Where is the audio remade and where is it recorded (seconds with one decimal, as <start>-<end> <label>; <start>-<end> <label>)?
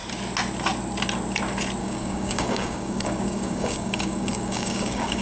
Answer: 0.0-1.8 recorded; 1.8-5.2 remade